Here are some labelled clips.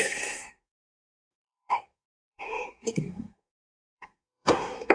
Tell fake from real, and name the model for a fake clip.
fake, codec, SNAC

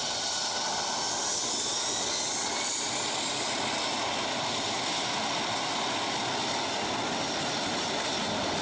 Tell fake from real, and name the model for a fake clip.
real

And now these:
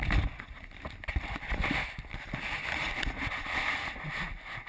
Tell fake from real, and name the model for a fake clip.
real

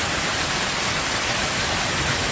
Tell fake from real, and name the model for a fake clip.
real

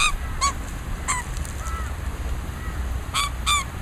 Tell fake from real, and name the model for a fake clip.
real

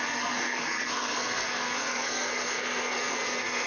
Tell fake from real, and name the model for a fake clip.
fake, codec, SNAC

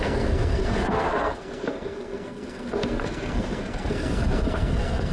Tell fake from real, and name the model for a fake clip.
fake, codec, SNAC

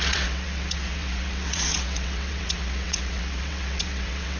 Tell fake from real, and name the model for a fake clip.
fake, vocoder, WaveNeXt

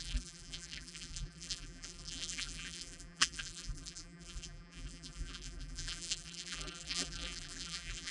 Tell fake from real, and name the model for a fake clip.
fake, vocoder, BigVGAN v2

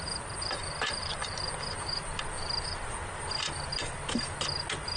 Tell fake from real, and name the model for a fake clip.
real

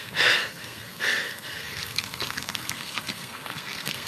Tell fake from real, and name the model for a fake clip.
fake, codec, SNAC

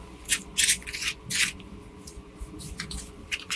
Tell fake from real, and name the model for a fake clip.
fake, vocoder, Vocos